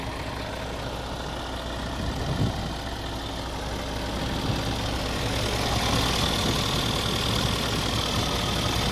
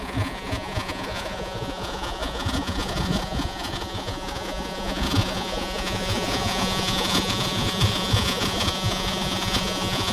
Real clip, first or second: first